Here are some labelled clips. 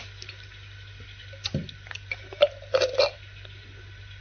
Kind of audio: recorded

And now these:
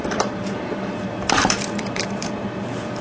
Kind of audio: remade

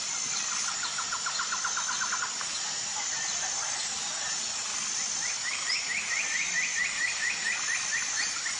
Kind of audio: recorded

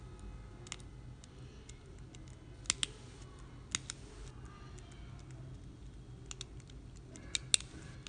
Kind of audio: recorded